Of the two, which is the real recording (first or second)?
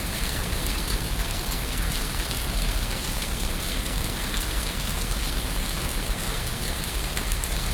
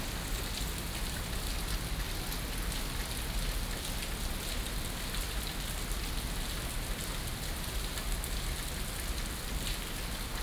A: second